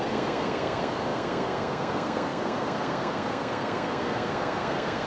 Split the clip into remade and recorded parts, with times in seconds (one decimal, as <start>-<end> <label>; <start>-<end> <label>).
0.0-5.1 remade